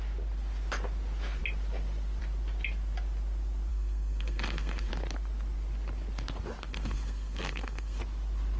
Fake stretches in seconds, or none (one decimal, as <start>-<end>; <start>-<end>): 3.7-4.9; 6.7-8.0